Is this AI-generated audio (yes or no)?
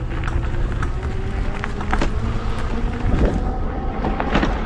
no